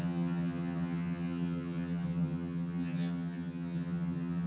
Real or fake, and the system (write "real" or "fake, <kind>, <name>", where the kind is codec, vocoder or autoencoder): fake, vocoder, HiFi-GAN